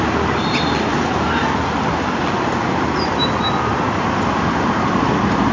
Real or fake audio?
real